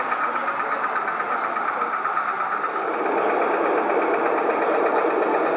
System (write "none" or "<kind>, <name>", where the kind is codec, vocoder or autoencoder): none